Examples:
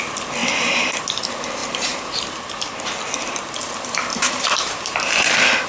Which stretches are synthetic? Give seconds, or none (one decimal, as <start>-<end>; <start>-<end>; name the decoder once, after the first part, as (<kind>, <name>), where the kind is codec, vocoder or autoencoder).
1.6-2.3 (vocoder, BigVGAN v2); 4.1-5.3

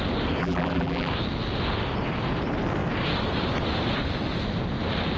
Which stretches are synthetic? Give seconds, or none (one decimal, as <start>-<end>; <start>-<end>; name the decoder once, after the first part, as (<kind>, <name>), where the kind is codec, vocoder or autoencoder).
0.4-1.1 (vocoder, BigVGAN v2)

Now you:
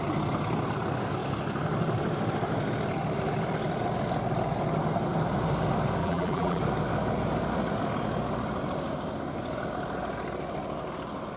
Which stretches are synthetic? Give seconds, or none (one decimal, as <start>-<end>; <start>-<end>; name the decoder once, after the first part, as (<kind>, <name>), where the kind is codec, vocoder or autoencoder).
6.0-6.6 (vocoder, BigVGAN v2)

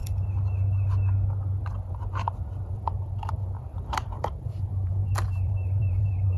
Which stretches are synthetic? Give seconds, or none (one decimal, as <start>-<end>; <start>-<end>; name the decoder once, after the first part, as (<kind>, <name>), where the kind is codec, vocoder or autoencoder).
1.7-6.4 (vocoder, BigVGAN v2)

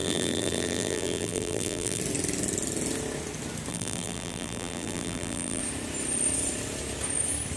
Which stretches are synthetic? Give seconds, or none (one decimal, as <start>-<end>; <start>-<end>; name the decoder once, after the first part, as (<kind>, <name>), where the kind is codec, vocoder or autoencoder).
0.0-2.0 (vocoder, BigVGAN v2); 3.7-5.6

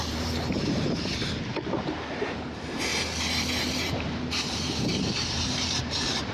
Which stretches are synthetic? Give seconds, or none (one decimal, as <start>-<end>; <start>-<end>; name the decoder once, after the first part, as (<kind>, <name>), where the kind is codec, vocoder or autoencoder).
0.0-2.9 (vocoder, BigVGAN v2); 3.6-6.3

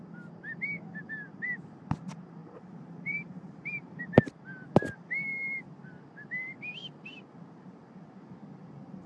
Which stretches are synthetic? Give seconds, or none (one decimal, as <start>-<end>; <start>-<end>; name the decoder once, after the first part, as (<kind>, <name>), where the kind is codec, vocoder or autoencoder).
2.4-4.0 (vocoder, BigVGAN v2)